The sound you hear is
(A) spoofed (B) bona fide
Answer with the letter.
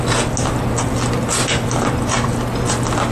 B